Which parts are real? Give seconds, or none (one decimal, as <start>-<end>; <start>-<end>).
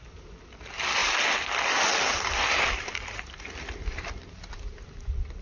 0.0-5.4